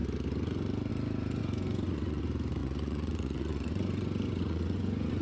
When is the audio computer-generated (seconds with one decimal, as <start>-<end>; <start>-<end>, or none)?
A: 1.4-2.2; 2.6-5.2

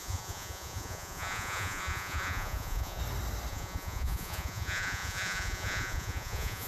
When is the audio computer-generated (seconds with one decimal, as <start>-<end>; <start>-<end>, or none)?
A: 0.0-3.0; 3.5-6.7

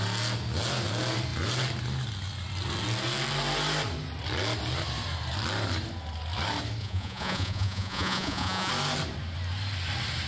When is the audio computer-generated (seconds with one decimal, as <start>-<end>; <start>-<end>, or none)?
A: 6.8-8.7

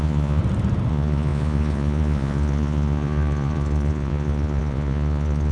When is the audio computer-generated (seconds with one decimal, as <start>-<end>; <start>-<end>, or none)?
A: 0.0-0.4; 0.9-5.5

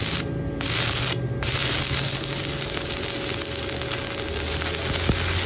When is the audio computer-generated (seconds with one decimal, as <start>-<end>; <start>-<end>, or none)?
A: none